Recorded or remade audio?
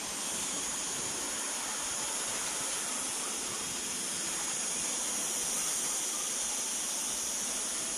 recorded